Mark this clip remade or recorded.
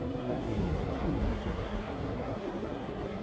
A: remade